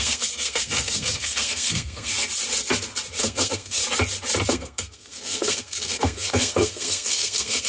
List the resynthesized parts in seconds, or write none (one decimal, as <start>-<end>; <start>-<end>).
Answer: 0.0-2.1; 3.2-3.8; 4.5-7.7